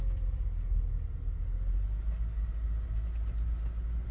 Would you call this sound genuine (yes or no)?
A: yes